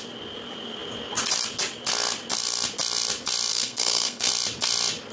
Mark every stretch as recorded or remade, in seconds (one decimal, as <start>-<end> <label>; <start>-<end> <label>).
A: 0.0-3.5 recorded; 3.5-4.3 remade; 4.3-5.1 recorded